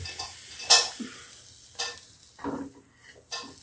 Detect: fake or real real